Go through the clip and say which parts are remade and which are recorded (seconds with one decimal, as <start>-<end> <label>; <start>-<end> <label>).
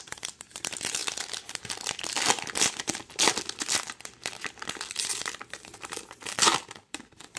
0.0-7.4 remade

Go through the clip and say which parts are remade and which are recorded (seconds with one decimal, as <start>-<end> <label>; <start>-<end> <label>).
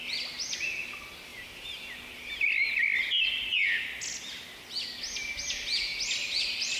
0.0-6.8 recorded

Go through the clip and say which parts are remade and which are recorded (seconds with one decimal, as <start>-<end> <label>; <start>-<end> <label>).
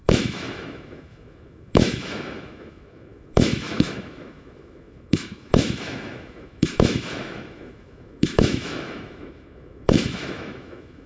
0.0-11.1 remade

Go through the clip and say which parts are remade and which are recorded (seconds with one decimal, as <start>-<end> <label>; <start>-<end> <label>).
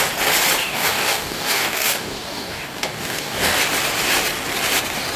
0.0-0.6 recorded; 0.6-3.6 remade; 3.6-5.2 recorded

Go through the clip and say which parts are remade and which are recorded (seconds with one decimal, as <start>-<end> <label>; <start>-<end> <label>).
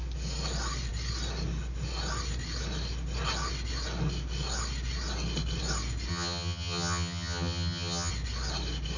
0.0-6.1 recorded; 6.1-8.1 remade; 8.1-9.0 recorded